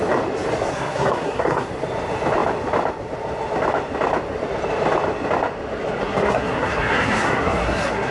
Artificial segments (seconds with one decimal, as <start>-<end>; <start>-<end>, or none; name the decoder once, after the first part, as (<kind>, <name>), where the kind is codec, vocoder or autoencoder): 0.7-1.7 (codec, SNAC); 6.0-8.1